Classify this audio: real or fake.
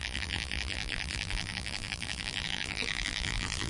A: fake